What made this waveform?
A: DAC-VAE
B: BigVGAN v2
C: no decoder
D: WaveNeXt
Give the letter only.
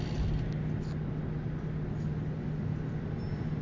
C